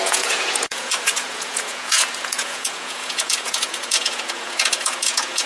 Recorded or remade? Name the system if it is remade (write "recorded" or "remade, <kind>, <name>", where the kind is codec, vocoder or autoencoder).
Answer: remade, vocoder, Vocos